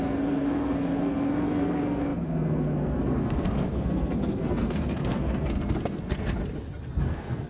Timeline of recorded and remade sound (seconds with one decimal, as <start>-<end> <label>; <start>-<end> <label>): 0.0-6.4 remade; 6.4-7.0 recorded; 7.0-7.5 remade

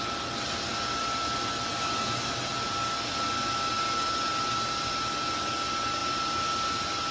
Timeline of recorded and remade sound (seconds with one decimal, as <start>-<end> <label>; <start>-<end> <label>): 0.0-7.1 recorded

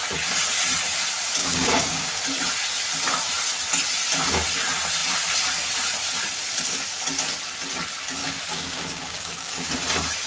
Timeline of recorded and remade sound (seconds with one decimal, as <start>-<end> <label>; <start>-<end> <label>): 0.0-1.4 recorded; 1.4-2.2 remade; 2.2-8.2 recorded; 8.2-9.7 remade; 9.7-10.3 recorded

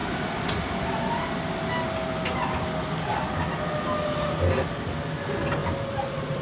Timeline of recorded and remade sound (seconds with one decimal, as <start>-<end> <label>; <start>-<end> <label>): 0.0-5.6 recorded; 5.6-6.4 remade

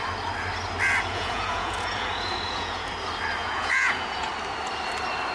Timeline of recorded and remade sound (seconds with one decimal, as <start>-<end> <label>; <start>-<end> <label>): 0.0-1.1 recorded; 1.1-2.9 remade; 2.9-3.4 recorded; 3.4-4.3 remade; 4.3-5.3 recorded

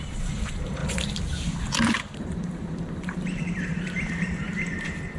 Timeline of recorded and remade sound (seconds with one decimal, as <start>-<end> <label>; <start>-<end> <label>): 0.0-0.8 remade; 0.8-2.3 recorded; 2.3-5.2 remade

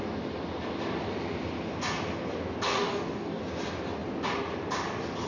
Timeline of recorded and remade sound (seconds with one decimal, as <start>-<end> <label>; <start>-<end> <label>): 0.0-2.7 recorded; 2.7-3.4 remade; 3.4-5.3 recorded